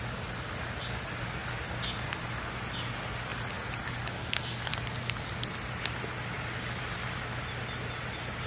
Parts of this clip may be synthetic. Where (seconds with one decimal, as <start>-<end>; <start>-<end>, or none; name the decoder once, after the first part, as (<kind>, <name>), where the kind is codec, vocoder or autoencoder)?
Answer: none